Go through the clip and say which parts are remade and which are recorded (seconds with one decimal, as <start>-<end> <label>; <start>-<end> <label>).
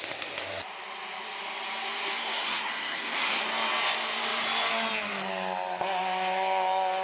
0.0-2.2 recorded; 2.2-3.4 remade; 3.4-7.0 recorded